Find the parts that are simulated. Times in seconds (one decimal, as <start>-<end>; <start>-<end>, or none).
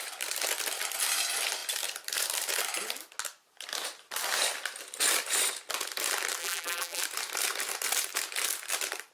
6.4-7.0